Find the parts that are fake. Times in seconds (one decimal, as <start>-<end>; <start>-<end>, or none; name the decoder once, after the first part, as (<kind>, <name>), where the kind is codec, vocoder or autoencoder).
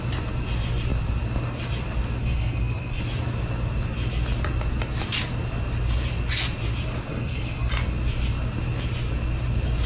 2.2-3.0 (codec, SNAC); 7.1-7.7